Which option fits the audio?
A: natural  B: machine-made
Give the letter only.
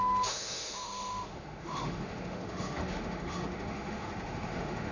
B